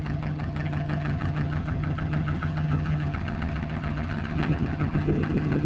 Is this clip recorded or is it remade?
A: remade